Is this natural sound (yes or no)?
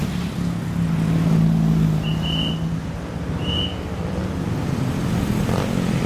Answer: yes